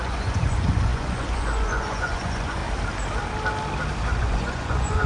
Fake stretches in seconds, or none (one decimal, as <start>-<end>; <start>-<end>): 0.0-2.6; 4.2-5.1